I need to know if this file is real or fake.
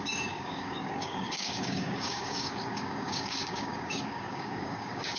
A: fake